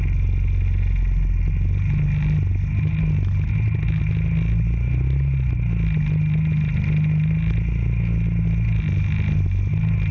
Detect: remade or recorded recorded